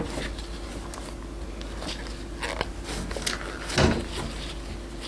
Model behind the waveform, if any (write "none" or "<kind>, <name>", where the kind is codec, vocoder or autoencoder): none